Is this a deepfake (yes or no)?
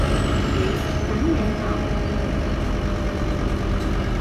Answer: no